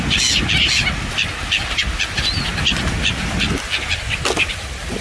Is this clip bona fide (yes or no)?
yes